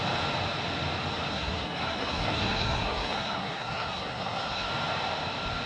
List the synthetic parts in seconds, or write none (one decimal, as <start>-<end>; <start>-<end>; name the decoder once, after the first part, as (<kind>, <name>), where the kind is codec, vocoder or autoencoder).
1.3-4.7 (codec, SNAC)